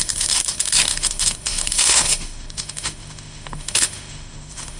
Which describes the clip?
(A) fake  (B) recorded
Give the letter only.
A